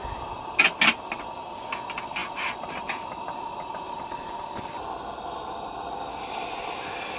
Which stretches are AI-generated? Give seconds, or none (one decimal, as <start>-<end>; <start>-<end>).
none

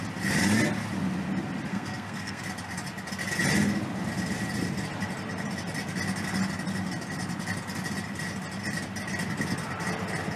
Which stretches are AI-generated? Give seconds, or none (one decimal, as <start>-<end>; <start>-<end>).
1.7-2.4

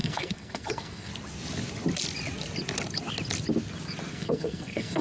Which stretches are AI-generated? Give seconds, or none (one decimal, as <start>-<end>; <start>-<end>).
0.0-1.1; 4.1-5.0

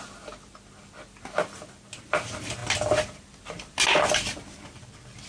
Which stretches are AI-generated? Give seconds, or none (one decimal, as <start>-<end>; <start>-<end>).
none